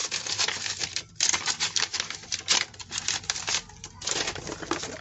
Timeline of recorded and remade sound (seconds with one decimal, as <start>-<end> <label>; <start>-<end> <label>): 0.0-5.0 recorded